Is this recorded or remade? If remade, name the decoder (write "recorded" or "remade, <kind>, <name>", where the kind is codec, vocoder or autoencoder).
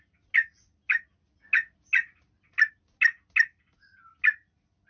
recorded